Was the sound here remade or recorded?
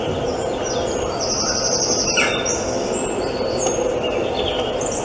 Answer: recorded